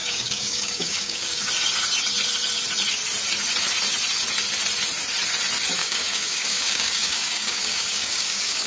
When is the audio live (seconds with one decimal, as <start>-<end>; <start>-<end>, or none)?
1.5-5.8

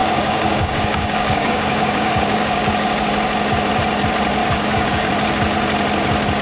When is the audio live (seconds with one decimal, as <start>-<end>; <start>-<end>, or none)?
3.1-4.4; 5.1-6.4

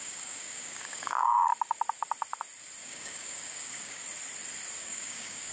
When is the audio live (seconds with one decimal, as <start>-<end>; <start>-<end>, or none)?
1.5-2.8; 4.0-4.8

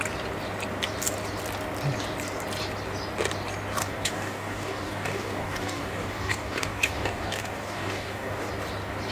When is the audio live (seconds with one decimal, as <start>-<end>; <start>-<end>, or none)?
0.0-3.8; 8.5-9.1

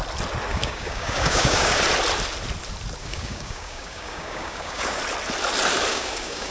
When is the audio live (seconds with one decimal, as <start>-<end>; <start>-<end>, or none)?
0.0-0.5; 1.8-3.0; 5.0-5.9